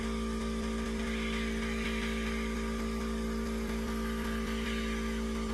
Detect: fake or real real